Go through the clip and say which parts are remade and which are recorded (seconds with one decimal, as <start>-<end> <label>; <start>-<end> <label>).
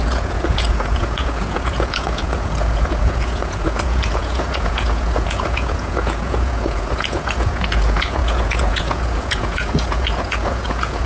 0.0-11.1 remade